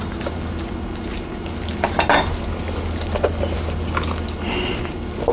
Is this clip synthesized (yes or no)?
no